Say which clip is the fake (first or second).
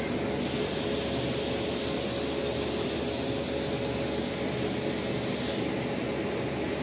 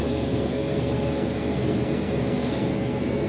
second